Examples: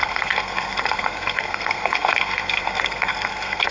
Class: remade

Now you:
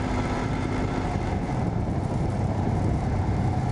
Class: remade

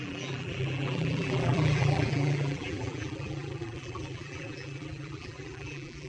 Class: remade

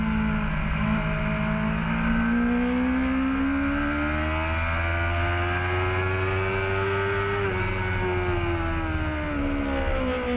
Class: recorded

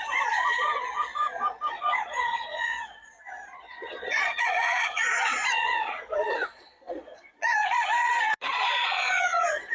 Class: remade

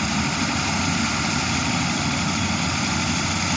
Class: remade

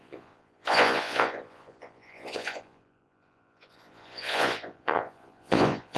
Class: remade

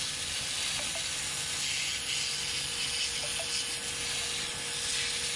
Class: recorded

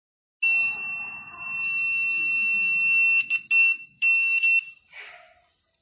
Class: recorded